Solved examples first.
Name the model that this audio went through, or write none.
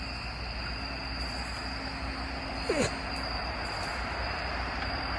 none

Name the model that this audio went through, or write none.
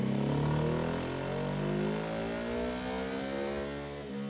none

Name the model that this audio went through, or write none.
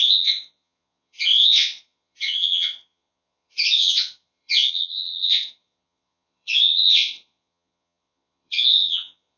vocoder, Vocos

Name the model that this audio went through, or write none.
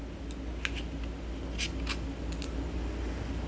none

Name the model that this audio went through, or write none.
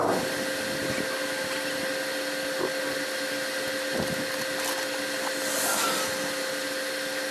none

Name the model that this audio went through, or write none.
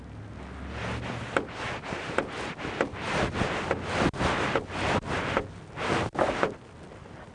none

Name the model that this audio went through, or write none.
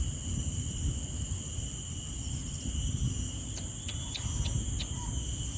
none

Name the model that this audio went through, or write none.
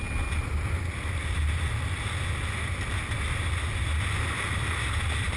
none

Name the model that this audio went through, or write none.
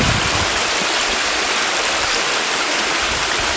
none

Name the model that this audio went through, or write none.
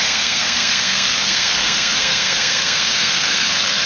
codec, SNAC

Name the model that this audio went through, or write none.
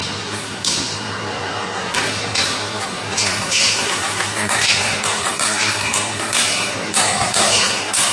codec, SNAC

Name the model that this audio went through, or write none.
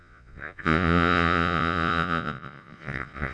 vocoder, Vocos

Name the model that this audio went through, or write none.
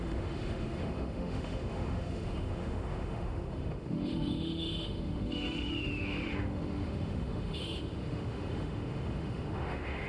autoencoder, DAC-VAE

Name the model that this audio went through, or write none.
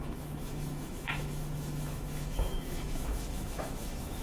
autoencoder, DAC-VAE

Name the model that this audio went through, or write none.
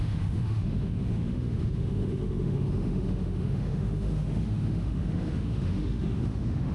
autoencoder, DAC-VAE